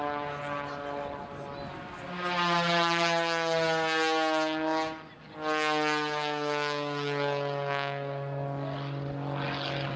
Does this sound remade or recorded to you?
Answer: recorded